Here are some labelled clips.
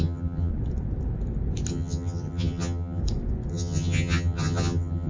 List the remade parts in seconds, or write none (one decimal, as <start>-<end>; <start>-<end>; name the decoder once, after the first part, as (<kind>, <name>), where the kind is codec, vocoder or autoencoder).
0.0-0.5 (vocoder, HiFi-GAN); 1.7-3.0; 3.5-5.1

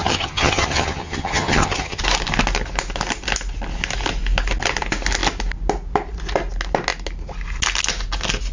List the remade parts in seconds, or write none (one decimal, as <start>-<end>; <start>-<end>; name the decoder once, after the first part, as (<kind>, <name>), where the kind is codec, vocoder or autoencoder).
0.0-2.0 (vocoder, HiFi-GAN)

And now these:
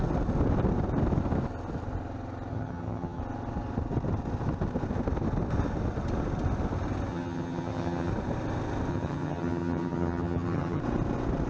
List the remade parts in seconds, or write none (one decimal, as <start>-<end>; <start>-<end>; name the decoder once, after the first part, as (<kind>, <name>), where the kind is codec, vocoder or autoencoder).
2.5-3.2 (vocoder, HiFi-GAN); 7.1-8.1; 8.9-10.8

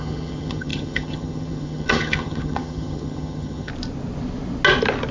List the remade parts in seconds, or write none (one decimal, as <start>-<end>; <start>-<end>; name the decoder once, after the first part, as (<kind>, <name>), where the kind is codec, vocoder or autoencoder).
0.0-3.7 (vocoder, HiFi-GAN)

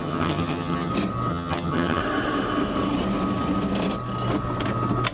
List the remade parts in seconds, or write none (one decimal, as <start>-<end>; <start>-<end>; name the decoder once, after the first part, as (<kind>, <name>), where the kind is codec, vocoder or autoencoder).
0.0-0.9 (vocoder, HiFi-GAN); 1.3-2.0

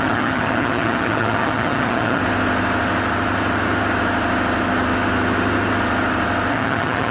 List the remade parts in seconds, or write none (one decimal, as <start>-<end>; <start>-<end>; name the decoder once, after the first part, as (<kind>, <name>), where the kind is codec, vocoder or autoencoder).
0.0-2.2 (vocoder, HiFi-GAN); 6.5-7.1

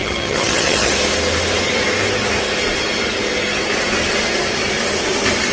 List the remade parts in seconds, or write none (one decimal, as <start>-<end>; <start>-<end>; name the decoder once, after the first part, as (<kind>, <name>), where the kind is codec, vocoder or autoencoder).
0.0-0.9 (vocoder, HiFi-GAN)

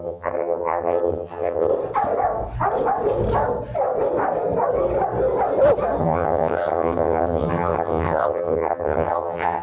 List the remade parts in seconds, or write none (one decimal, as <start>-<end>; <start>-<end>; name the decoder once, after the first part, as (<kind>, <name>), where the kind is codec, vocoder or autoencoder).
0.0-1.7 (vocoder, HiFi-GAN); 6.0-9.6